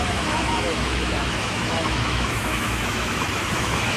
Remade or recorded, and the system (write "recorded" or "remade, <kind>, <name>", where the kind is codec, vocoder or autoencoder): remade, autoencoder, DAC-VAE